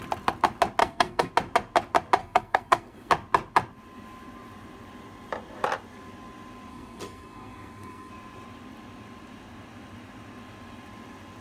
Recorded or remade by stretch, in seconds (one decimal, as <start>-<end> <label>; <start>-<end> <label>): 0.0-0.8 recorded; 0.8-1.3 remade; 1.3-2.2 recorded; 2.2-3.1 remade; 3.1-6.7 recorded; 6.7-8.1 remade; 8.1-11.4 recorded